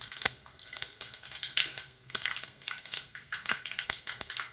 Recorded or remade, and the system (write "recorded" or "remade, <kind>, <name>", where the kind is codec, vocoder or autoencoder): remade, codec, SNAC